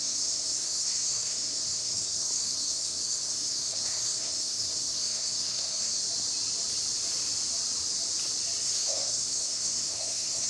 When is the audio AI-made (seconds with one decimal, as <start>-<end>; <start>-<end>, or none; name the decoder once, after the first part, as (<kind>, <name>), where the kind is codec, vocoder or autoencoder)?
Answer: 0.0-6.0 (codec, SNAC); 8.6-10.5